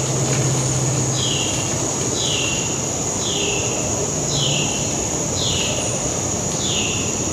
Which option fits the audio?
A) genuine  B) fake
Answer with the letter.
A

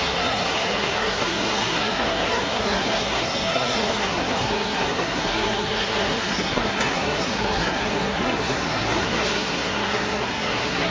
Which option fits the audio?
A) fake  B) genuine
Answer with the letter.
A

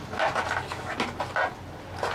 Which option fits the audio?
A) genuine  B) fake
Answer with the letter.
A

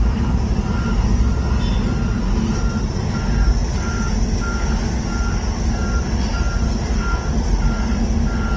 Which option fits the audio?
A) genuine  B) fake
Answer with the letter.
A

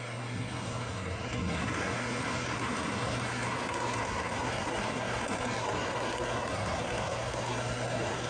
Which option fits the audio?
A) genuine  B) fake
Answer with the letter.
B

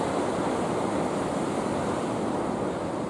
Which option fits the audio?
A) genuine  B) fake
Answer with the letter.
A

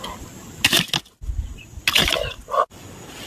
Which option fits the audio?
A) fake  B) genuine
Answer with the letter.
B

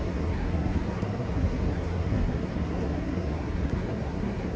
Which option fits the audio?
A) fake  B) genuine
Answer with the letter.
A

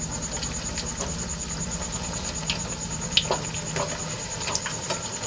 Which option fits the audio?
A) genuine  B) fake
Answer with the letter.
A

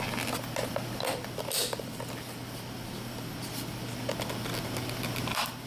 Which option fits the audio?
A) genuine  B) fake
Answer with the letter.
A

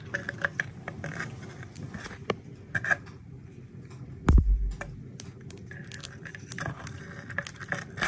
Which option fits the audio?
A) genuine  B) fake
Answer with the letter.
A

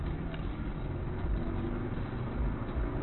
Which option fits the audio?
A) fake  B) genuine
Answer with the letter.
B